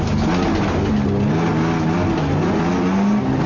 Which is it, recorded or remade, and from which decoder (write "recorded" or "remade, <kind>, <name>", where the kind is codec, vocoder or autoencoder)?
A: recorded